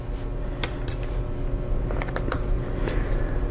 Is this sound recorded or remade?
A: recorded